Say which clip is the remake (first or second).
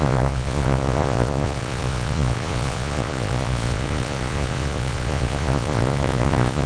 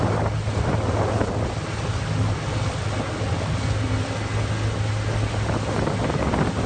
first